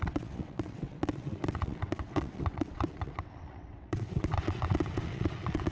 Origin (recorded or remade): remade